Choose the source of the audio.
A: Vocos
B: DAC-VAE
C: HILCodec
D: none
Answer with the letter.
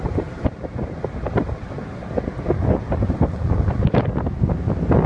D